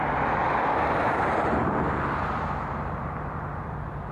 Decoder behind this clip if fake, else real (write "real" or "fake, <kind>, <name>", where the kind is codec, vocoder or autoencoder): fake, vocoder, BigVGAN v2